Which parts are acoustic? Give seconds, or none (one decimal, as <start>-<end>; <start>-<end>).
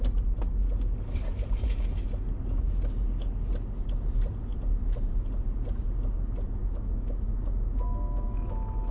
0.0-6.6